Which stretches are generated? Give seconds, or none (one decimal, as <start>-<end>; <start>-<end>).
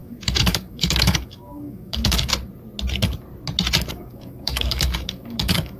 0.0-2.3; 3.9-5.8